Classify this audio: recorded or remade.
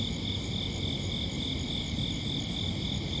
recorded